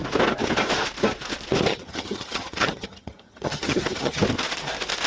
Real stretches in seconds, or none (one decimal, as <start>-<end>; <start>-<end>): 0.0-1.7; 4.2-5.1